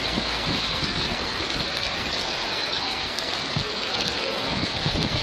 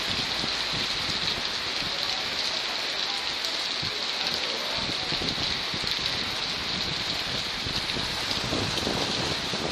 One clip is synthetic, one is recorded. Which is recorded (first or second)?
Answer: second